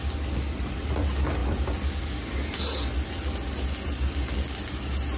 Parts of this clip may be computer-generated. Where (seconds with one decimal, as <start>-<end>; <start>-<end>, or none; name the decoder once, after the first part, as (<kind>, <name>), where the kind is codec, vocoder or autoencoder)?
none